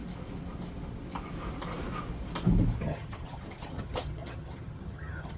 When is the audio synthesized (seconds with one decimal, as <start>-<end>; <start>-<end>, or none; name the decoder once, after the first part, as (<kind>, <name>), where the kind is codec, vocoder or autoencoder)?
2.8-5.4 (vocoder, HiFi-GAN)